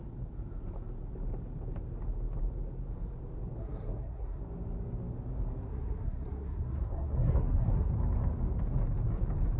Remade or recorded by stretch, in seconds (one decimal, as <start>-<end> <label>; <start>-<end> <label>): 0.0-3.6 recorded; 3.6-4.4 remade; 4.4-5.7 recorded; 5.7-7.9 remade; 7.9-9.6 recorded